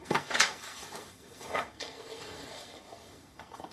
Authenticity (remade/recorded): remade